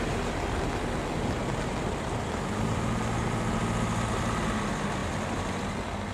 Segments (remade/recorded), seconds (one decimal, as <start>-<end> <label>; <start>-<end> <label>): 0.0-5.0 recorded; 5.0-5.5 remade; 5.5-6.1 recorded